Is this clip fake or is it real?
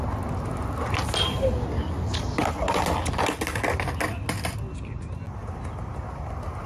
real